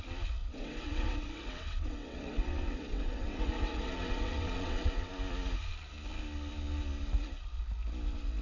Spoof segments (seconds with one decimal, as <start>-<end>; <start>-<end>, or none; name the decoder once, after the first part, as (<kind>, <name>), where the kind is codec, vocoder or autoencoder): 0.4-5.1 (vocoder, WaveNeXt)